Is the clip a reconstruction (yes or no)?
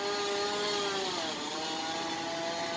no